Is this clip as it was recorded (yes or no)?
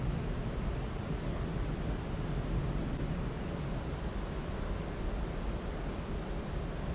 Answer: yes